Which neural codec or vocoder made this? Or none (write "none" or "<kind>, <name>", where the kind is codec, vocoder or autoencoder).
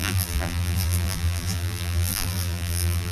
vocoder, BigVGAN v2